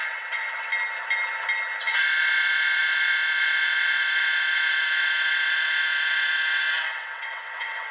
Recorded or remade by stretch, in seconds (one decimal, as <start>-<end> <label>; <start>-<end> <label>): 0.0-0.7 remade; 0.7-1.9 recorded; 1.9-7.9 remade